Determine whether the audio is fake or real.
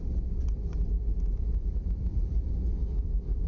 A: fake